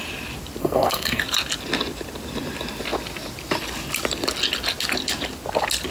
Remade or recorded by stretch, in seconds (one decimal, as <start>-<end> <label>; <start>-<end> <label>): 0.0-0.6 recorded; 0.6-1.2 remade; 1.2-5.9 recorded